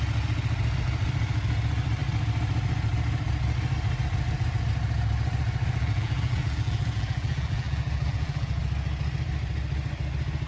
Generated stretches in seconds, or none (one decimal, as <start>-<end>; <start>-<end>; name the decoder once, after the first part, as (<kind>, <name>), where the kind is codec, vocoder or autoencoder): 5.8-8.6 (vocoder, BigVGAN v2)